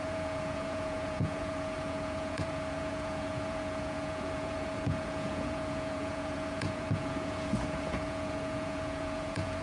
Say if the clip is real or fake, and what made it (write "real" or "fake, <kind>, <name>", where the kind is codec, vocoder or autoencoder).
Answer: fake, vocoder, Vocos